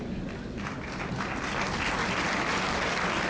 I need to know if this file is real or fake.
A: real